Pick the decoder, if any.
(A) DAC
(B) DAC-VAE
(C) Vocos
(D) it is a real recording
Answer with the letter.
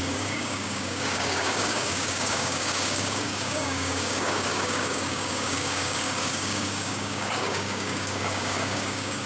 A